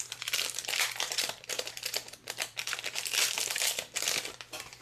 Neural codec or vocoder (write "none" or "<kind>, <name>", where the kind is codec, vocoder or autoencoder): vocoder, BigVGAN v2